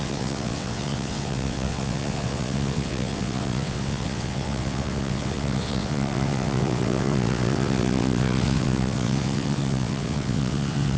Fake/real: fake